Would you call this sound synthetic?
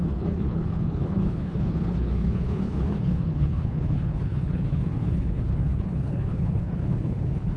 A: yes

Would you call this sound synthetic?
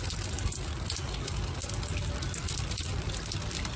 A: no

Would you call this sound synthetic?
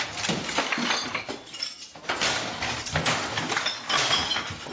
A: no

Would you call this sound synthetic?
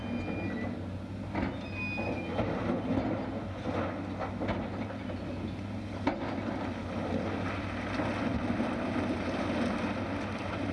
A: no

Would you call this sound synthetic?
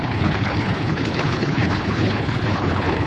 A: yes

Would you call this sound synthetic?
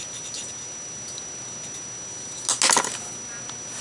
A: no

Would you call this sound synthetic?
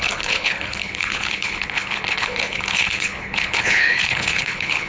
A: yes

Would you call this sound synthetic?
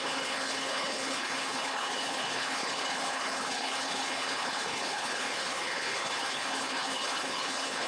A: yes